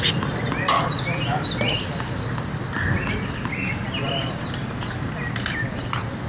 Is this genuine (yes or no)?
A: yes